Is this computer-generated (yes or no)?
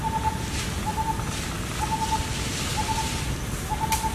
no